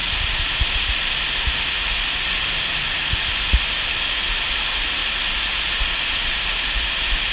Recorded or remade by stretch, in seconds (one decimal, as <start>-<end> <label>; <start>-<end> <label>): 0.0-7.3 recorded